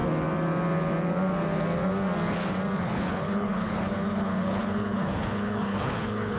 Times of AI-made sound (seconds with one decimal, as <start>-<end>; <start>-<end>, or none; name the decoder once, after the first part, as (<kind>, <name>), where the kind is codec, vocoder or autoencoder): 2.8-6.4 (codec, HILCodec)